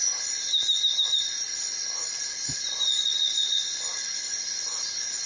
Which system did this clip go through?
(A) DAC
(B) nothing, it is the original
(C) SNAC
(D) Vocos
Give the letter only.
B